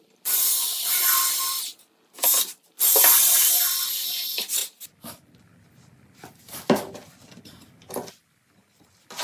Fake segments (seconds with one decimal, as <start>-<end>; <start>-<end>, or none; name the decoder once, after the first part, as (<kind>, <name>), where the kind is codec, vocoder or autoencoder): none